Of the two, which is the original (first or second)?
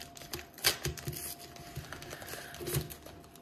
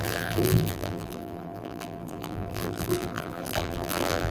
first